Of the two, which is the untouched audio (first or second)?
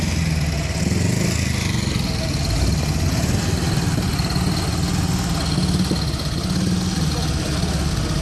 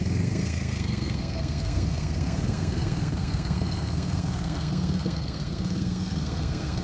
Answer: first